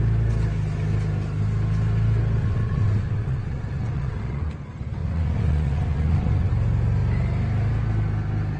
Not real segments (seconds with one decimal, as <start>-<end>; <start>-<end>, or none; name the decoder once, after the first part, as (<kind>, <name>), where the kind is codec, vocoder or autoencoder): 2.4-4.5 (vocoder, WaveNeXt); 5.0-6.5